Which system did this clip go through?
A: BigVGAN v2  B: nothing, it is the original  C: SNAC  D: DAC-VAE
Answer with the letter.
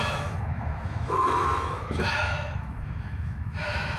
D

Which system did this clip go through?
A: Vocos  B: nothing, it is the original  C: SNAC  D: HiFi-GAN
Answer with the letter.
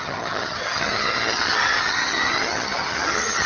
D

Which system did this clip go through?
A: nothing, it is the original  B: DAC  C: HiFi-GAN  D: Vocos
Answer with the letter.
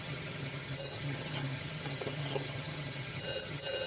C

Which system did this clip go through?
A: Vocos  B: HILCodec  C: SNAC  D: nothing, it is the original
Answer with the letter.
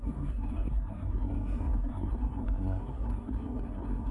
C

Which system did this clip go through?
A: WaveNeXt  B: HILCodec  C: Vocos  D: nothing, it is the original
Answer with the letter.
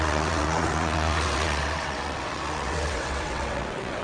A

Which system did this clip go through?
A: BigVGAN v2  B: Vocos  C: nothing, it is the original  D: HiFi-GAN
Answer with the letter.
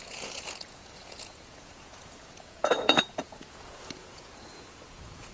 B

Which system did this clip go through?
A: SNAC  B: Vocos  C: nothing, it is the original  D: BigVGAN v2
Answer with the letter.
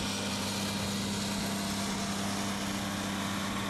C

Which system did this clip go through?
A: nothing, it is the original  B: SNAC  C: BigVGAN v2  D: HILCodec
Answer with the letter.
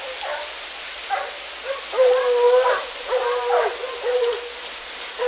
A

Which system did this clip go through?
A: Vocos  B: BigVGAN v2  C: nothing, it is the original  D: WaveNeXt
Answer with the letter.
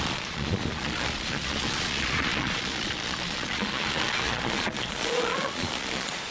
A